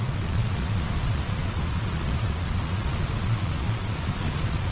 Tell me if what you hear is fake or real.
fake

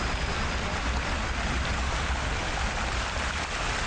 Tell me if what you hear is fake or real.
real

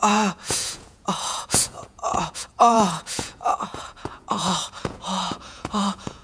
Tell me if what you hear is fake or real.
fake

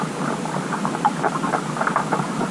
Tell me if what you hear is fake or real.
real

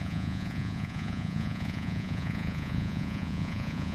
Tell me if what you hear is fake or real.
fake